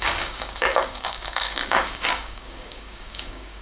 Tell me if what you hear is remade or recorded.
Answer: remade